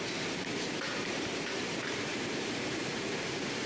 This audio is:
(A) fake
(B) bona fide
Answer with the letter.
A